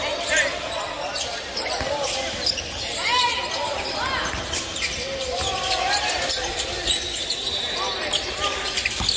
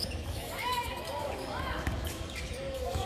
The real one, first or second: first